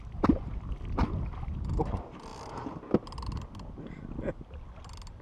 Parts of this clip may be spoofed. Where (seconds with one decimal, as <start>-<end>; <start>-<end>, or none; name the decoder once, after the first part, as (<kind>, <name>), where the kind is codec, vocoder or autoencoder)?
none

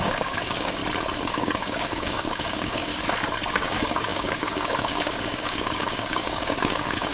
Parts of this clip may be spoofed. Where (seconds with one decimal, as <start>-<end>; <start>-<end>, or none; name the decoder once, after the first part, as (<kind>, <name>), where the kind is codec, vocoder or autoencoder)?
0.0-0.8 (codec, DAC); 1.3-2.9; 3.5-7.1

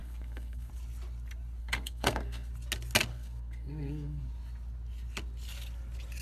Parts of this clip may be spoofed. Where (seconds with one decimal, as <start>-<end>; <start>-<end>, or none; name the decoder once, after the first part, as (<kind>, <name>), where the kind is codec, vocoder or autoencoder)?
0.0-0.7 (codec, SNAC); 1.6-2.5; 3.1-4.3

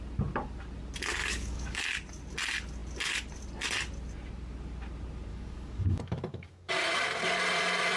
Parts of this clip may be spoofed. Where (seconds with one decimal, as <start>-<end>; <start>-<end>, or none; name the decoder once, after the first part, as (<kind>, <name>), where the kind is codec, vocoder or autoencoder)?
1.2-1.8 (codec, DAC); 5.3-6.7

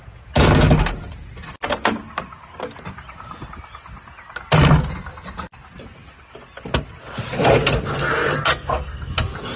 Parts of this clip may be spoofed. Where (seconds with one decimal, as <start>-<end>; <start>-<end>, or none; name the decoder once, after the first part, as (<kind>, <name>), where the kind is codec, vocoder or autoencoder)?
8.5-9.1 (codec, SNAC)

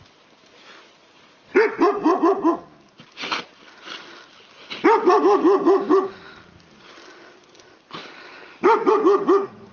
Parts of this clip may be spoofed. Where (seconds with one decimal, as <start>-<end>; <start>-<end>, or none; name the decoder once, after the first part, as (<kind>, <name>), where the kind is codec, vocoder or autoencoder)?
none

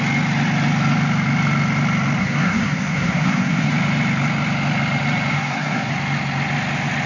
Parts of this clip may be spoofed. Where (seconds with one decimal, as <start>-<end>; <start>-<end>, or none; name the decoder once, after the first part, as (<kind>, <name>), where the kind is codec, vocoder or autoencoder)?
2.2-3.7 (codec, SNAC); 5.3-5.9